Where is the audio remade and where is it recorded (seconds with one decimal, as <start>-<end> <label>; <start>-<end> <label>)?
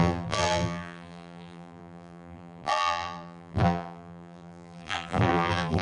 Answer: 0.0-5.8 remade